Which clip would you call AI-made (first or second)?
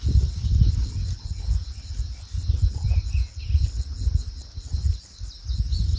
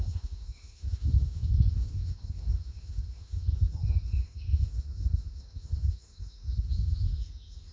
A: second